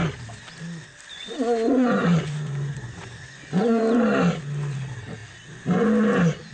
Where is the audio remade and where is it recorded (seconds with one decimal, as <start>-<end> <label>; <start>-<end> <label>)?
0.0-1.1 recorded; 1.1-3.8 remade; 3.8-6.5 recorded